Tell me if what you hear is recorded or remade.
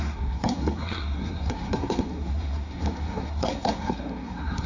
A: remade